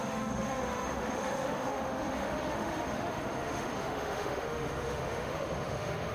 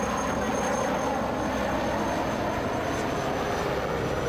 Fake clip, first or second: first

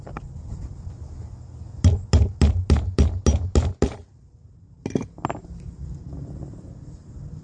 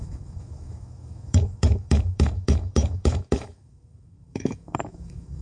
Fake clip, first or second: second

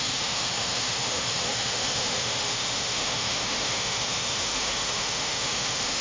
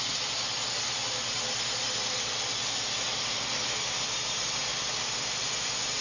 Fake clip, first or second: first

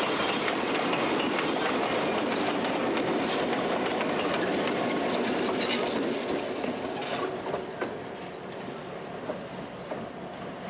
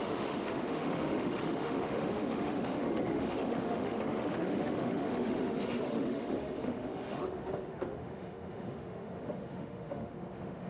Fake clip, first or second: second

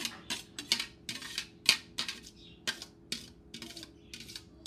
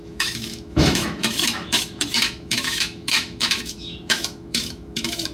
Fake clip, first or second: second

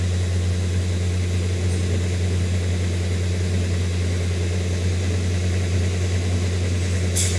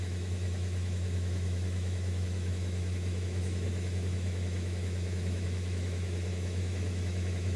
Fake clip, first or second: second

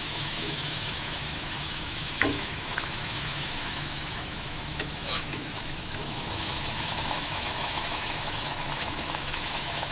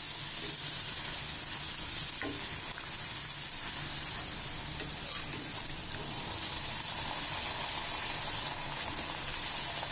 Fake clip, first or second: first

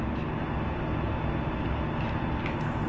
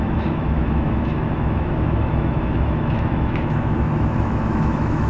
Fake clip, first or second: second